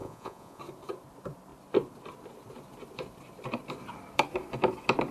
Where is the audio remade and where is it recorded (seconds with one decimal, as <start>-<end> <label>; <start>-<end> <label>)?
0.0-0.6 remade; 0.6-5.1 recorded